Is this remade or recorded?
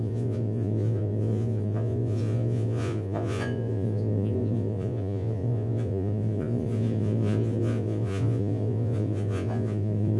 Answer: remade